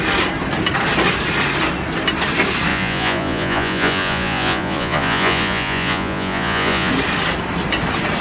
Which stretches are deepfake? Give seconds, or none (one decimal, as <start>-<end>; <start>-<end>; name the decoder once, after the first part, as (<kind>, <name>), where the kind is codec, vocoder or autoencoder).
2.7-6.9 (vocoder, Vocos)